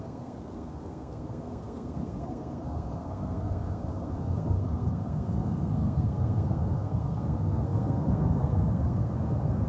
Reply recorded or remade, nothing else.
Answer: remade